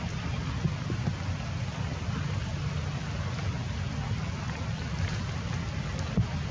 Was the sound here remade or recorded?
recorded